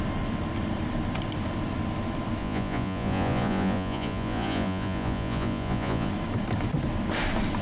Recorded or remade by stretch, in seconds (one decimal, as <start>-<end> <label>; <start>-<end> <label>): 0.0-2.4 recorded; 2.4-6.1 remade; 6.1-7.6 recorded

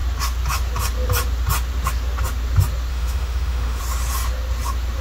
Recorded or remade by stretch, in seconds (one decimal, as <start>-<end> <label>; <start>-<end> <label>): 0.0-2.9 recorded; 2.9-3.8 remade; 3.8-5.0 recorded